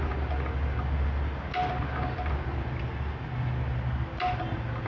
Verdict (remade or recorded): recorded